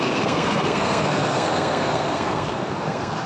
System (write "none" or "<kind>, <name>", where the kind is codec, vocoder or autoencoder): codec, SNAC